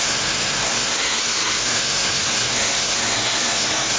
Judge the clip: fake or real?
fake